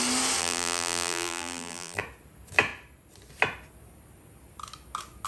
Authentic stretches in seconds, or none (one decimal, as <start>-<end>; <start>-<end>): 0.0-0.4; 2.0-5.3